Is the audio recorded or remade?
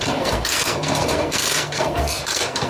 remade